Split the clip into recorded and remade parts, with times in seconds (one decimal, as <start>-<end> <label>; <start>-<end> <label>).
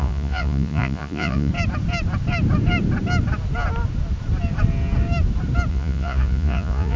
0.0-1.5 remade; 1.5-5.7 recorded; 5.7-7.0 remade